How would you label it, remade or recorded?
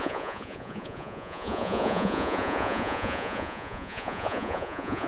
remade